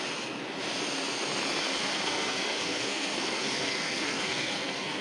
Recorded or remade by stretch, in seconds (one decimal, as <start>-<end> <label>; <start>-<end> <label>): 0.0-1.8 recorded; 1.8-5.0 remade

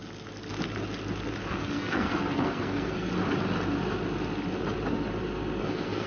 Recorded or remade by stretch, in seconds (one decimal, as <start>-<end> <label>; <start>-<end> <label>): 0.0-1.5 recorded; 1.5-3.1 remade; 3.1-5.6 recorded; 5.6-6.1 remade

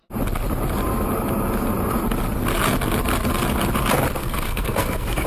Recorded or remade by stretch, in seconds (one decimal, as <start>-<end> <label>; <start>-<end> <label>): 0.0-4.2 recorded; 4.2-5.3 remade

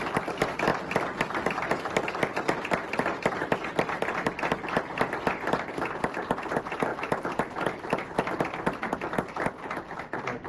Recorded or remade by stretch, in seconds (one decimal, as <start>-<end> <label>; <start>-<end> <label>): 0.0-10.5 recorded

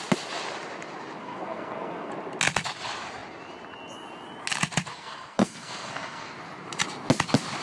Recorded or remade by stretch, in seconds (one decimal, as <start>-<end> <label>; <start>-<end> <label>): 0.0-1.2 recorded; 1.2-2.1 remade; 2.1-4.9 recorded; 4.9-6.3 remade; 6.3-7.6 recorded

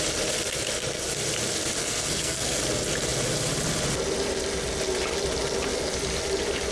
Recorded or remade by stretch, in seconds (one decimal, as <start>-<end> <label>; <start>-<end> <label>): 0.0-1.8 recorded; 1.8-2.6 remade; 2.6-6.7 recorded

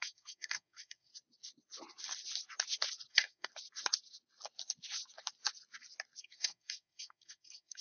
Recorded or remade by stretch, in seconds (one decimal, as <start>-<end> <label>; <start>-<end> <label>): 0.0-1.1 remade; 1.1-3.1 recorded; 3.1-3.5 remade; 3.5-6.2 recorded; 6.2-7.8 remade

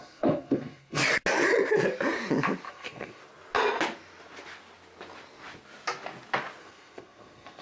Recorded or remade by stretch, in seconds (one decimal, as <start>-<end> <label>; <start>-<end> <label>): 0.0-1.0 remade; 1.0-2.7 recorded; 2.7-3.2 remade; 3.2-6.6 recorded; 6.6-7.6 remade